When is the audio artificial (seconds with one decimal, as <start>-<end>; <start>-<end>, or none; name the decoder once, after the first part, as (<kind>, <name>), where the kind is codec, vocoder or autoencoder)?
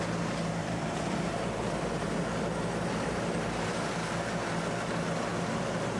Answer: 0.6-2.9 (vocoder, BigVGAN v2)